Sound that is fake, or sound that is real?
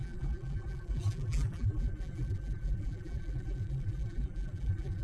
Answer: fake